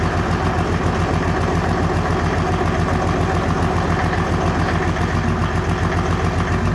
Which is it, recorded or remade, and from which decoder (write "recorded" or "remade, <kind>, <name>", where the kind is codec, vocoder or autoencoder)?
recorded